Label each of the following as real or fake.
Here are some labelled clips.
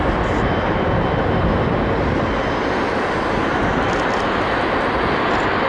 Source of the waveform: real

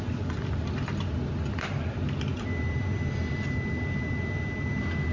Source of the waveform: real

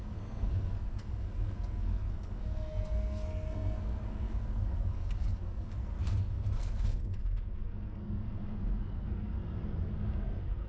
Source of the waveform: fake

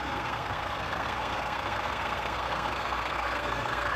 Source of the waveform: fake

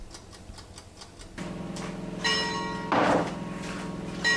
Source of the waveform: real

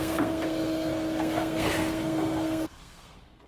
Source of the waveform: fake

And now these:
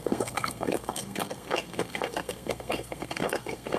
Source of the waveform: fake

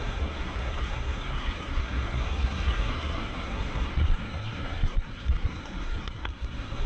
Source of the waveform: fake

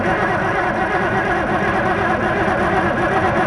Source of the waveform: real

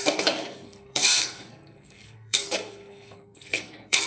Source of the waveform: fake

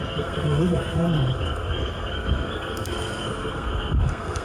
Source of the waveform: fake